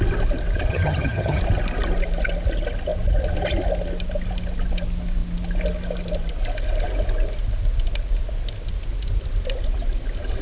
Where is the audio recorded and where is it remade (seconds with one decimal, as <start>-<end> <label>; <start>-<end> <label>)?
0.0-0.7 recorded; 0.7-1.4 remade; 1.4-10.4 recorded